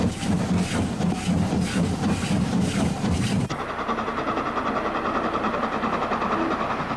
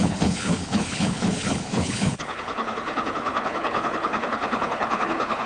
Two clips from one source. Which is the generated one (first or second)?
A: second